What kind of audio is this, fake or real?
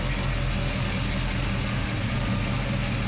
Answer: real